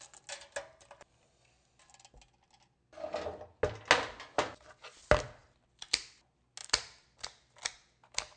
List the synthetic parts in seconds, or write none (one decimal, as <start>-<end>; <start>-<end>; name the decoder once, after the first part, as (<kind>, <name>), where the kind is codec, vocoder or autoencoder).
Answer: none